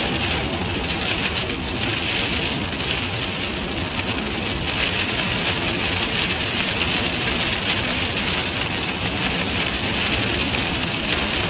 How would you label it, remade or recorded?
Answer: remade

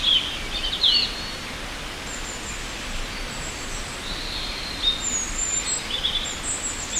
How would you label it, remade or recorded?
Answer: recorded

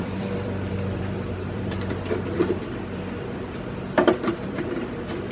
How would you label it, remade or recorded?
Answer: remade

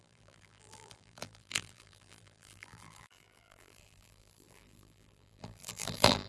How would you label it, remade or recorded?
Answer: remade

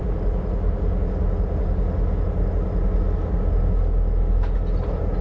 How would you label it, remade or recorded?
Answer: recorded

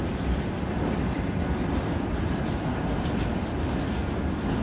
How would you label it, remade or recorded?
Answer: recorded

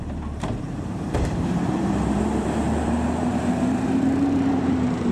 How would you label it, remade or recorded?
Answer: remade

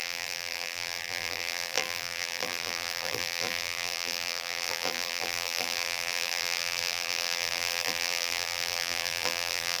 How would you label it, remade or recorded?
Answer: remade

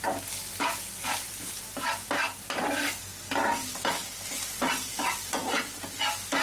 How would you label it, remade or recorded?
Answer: recorded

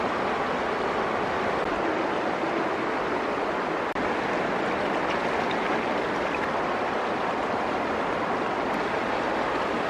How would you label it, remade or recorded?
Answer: recorded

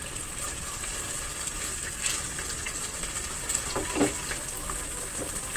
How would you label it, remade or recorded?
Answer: recorded